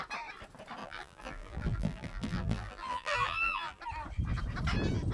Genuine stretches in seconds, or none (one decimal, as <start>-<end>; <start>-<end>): 0.0-0.8; 3.8-5.1